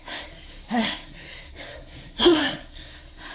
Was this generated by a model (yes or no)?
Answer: yes